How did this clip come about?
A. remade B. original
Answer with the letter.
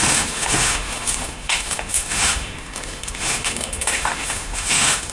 A